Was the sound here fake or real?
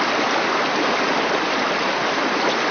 real